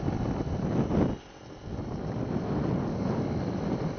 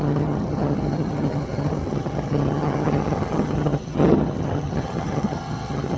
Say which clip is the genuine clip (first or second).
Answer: first